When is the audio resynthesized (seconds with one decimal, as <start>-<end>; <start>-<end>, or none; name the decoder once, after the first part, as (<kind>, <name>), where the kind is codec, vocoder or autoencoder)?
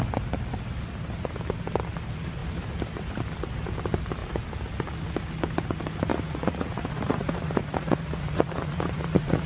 6.1-9.5 (vocoder, Vocos)